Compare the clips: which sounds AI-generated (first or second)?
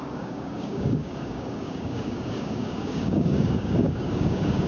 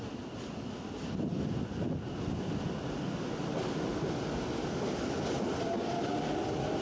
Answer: first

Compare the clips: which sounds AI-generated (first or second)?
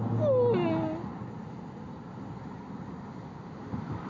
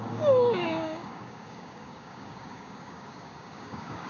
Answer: second